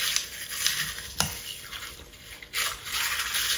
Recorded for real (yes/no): yes